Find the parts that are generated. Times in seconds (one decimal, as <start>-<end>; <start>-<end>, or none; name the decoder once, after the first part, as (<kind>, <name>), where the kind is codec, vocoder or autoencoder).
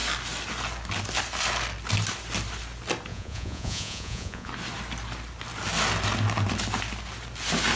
3.1-4.5 (vocoder, Vocos)